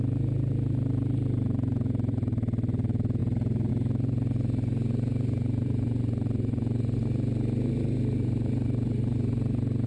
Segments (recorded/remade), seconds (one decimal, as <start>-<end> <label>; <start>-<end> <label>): 0.0-9.9 recorded

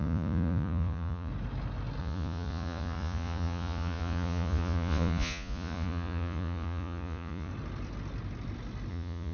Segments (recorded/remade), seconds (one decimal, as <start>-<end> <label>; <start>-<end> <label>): 0.0-1.3 remade; 1.3-2.0 recorded; 2.0-7.5 remade; 7.5-8.9 recorded; 8.9-9.3 remade

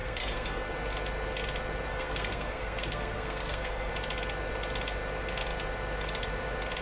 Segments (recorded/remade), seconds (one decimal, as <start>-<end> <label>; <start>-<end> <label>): 0.0-0.6 remade; 0.6-1.9 recorded; 1.9-3.9 remade; 3.9-6.8 recorded

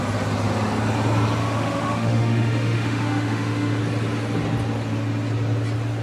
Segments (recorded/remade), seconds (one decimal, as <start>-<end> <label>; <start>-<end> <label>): 0.0-1.4 recorded; 1.4-3.8 remade; 3.8-6.0 recorded

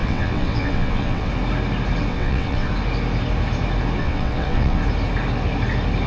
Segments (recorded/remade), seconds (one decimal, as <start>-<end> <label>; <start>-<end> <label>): 0.0-1.3 remade; 1.3-2.1 recorded; 2.1-2.7 remade; 2.7-4.0 recorded; 4.0-4.8 remade; 4.8-6.1 recorded